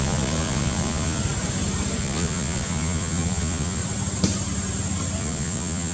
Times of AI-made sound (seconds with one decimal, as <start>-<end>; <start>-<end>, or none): 0.0-1.2; 2.0-3.8; 5.2-5.9